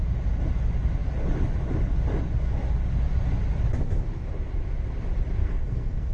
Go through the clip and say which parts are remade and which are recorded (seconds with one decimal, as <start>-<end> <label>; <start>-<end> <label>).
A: 0.0-5.4 recorded; 5.4-6.1 remade